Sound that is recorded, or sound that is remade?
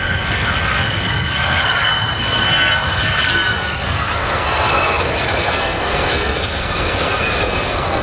remade